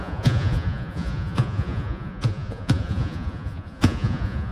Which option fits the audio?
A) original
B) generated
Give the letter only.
B